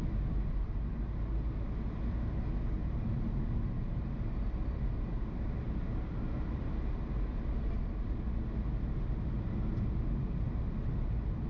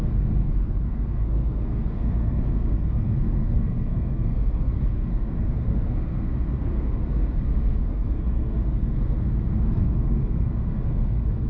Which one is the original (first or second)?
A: first